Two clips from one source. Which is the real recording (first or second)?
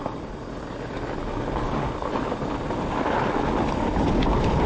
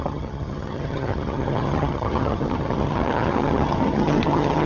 first